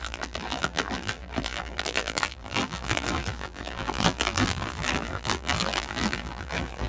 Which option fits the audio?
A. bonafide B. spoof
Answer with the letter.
B